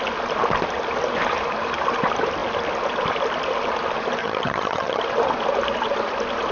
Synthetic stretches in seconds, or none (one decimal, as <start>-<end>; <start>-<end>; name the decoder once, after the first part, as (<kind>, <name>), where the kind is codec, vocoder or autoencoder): 4.2-5.0 (vocoder, HiFi-GAN)